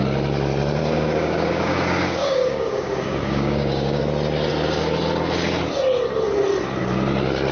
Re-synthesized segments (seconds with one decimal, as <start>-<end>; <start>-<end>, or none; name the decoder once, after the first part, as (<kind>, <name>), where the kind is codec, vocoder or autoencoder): 0.8-4.0 (codec, DAC)